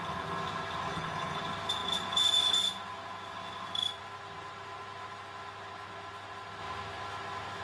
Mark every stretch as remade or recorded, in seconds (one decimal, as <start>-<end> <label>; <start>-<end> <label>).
0.0-0.9 recorded; 0.9-1.4 remade; 1.4-7.6 recorded